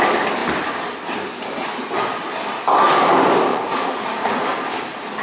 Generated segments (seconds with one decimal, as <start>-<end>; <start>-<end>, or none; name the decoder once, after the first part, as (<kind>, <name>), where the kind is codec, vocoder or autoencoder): 3.5-4.4 (vocoder, Vocos)